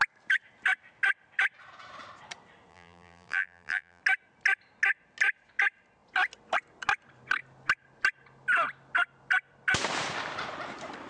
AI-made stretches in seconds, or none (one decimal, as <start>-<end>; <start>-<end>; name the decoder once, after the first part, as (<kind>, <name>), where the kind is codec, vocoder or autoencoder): 2.7-4.0 (vocoder, BigVGAN v2)